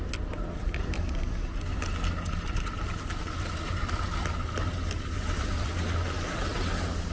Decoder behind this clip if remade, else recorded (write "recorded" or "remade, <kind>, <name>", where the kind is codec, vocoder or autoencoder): recorded